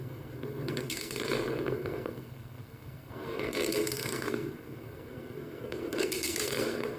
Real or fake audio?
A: fake